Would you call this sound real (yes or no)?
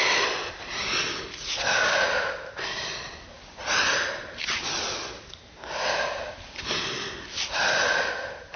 yes